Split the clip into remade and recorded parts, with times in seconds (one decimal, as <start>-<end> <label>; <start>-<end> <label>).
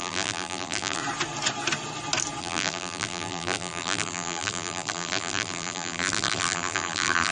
0.0-1.0 remade; 1.0-2.4 recorded; 2.4-7.3 remade